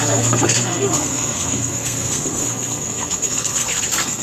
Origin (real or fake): fake